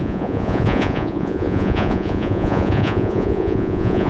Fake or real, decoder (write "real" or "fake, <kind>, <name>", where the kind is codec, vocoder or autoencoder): fake, vocoder, Vocos